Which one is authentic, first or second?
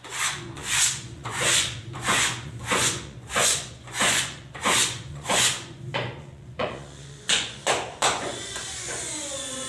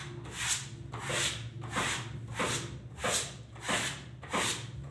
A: second